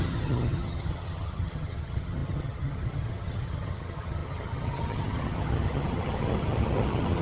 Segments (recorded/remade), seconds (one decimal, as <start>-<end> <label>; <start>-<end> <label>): 0.0-7.2 remade